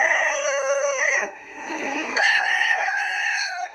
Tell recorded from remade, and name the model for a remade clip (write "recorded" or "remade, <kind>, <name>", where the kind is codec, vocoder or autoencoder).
remade, codec, SNAC